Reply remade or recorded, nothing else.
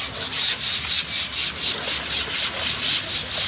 recorded